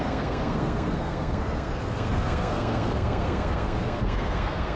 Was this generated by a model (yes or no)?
yes